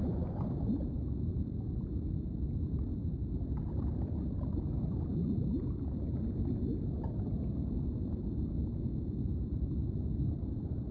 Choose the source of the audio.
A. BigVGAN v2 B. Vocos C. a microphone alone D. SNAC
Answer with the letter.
C